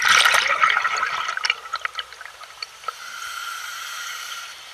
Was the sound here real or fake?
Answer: real